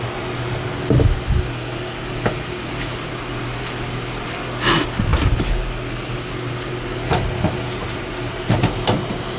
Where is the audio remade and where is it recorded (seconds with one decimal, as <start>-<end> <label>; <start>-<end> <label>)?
0.0-9.4 recorded